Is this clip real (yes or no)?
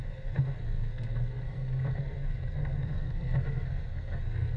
no